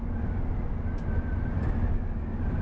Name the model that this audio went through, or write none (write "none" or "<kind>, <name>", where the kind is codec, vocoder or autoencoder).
none